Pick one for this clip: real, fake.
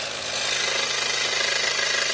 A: real